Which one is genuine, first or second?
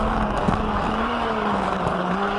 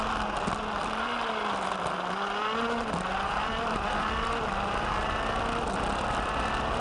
second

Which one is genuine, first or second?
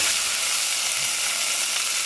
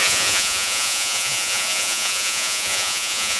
first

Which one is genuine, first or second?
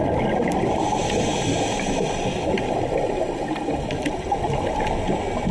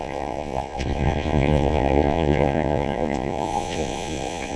first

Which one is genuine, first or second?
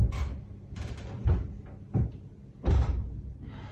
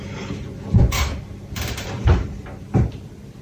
first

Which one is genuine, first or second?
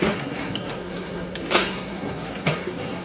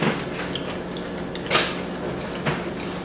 second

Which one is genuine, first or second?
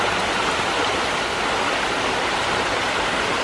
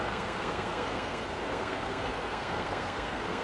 first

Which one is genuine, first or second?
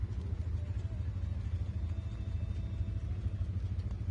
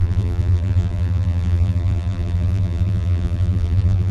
first